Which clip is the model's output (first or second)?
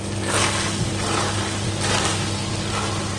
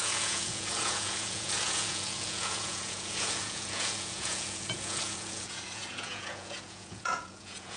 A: second